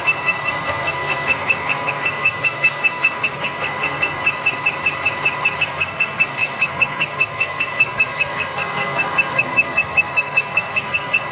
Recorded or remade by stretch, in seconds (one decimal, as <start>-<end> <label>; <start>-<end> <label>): 0.0-4.2 remade; 4.2-5.6 recorded; 5.6-11.3 remade